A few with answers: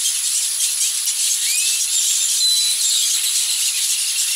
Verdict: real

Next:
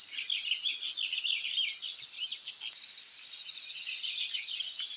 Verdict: real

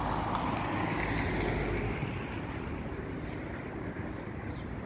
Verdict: real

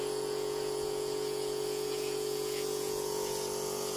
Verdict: fake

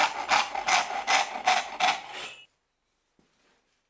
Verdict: real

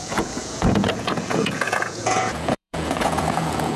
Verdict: fake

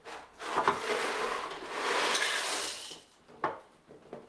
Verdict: real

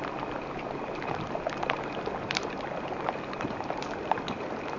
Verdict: real